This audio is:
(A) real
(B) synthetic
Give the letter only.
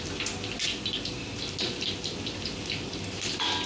A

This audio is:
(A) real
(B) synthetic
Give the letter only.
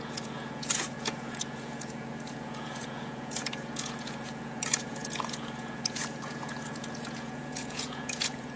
B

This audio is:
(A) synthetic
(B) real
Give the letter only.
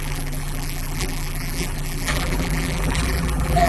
A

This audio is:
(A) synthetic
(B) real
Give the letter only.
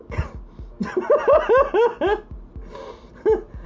B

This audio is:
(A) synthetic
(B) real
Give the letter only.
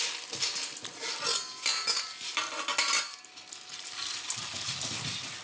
B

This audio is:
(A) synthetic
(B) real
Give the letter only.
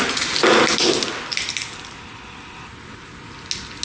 B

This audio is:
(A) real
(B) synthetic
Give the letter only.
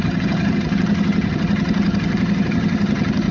B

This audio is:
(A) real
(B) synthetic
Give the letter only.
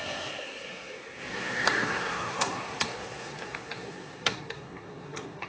B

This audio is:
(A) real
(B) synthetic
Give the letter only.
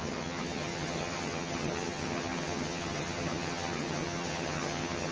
B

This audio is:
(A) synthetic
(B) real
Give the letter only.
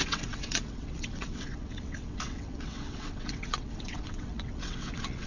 A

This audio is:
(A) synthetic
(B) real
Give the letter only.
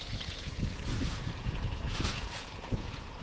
A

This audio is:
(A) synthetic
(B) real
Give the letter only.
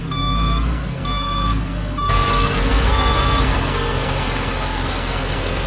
A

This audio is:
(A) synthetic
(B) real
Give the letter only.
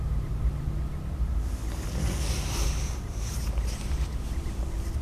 B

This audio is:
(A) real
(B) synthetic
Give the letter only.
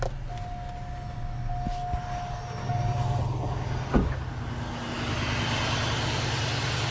A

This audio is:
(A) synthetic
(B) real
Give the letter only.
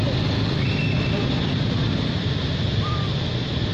B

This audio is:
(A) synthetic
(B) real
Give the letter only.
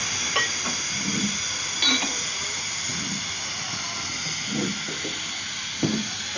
B